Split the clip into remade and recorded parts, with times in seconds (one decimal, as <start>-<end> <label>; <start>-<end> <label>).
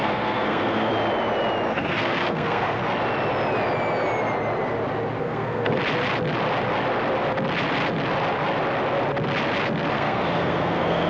0.0-0.9 remade; 0.9-1.7 recorded; 1.7-2.8 remade; 2.8-5.2 recorded; 5.2-5.8 remade; 5.8-9.9 recorded; 9.9-11.1 remade